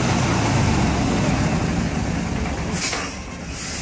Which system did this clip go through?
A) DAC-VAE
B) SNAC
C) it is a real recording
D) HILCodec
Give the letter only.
C